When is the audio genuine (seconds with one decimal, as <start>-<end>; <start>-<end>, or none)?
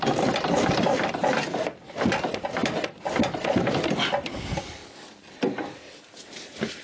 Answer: 0.0-6.8